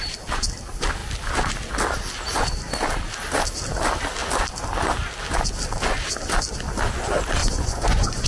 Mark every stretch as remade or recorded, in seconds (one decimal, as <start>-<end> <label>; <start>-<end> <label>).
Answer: 0.0-7.4 recorded; 7.4-8.3 remade